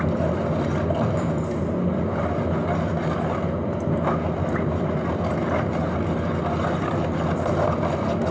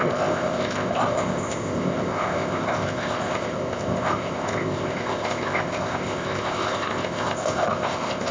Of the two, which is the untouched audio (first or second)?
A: first